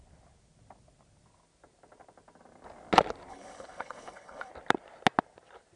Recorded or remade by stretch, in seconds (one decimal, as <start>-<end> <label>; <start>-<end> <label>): 0.0-3.3 recorded; 3.3-4.5 remade; 4.5-5.8 recorded